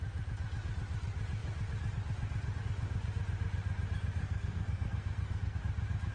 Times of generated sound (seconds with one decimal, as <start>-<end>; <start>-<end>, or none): 4.2-5.6